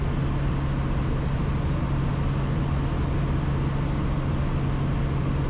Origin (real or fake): real